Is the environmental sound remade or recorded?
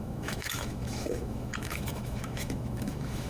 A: remade